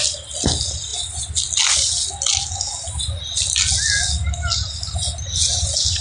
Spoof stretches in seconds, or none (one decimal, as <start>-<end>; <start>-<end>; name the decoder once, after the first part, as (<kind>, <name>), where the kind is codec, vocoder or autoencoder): none